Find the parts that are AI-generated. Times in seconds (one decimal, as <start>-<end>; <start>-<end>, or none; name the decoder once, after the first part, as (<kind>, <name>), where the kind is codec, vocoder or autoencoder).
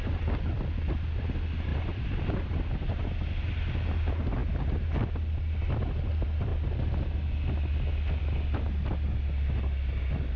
1.7-2.3 (vocoder, BigVGAN v2)